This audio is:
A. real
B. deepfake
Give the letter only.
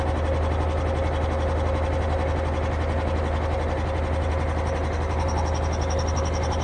A